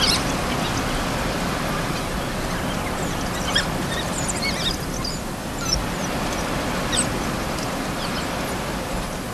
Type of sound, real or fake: real